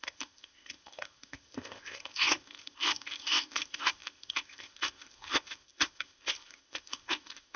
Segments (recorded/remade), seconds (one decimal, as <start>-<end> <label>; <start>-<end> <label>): 0.0-7.6 remade